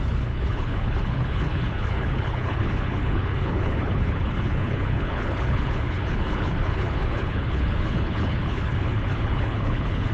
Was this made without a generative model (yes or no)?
no